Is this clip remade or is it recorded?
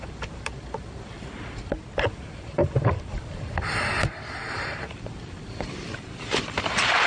remade